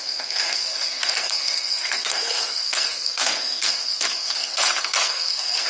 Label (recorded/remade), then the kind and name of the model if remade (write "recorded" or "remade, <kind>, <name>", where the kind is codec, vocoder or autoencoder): remade, codec, SNAC